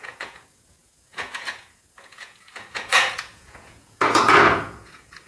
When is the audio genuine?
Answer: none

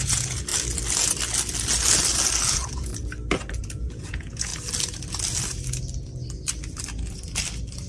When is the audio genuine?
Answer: 0.5-2.5; 2.9-3.6; 4.5-7.9